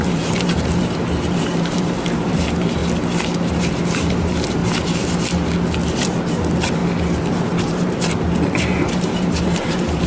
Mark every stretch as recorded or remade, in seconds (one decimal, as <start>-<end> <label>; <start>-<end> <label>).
0.0-2.8 remade; 2.8-3.5 recorded; 3.5-4.6 remade; 4.6-5.9 recorded; 5.9-6.8 remade; 6.8-7.4 recorded; 7.4-10.1 remade